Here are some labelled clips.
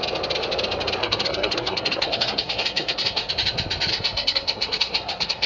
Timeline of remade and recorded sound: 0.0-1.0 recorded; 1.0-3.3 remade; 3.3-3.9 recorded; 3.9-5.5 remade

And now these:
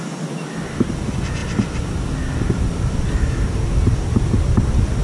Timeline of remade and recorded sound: 0.0-5.0 recorded

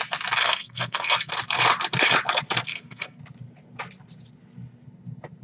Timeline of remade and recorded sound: 0.0-0.4 recorded; 0.4-1.3 remade; 1.3-2.7 recorded; 2.7-3.2 remade; 3.2-5.4 recorded

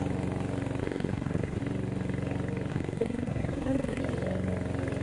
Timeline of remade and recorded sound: 0.0-0.8 recorded; 0.8-1.6 remade; 1.6-2.7 recorded; 2.7-4.0 remade; 4.0-5.0 recorded

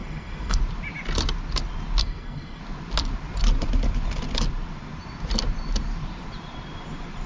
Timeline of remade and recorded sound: 0.0-0.6 remade; 0.6-2.0 recorded; 2.0-2.6 remade; 2.6-7.3 recorded